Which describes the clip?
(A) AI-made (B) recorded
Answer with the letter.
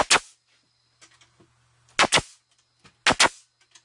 B